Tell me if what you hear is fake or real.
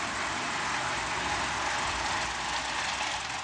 real